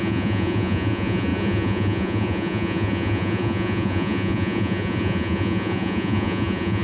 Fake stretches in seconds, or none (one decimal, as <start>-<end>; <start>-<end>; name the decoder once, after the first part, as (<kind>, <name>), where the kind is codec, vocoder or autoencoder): 0.0-6.8 (vocoder, Vocos)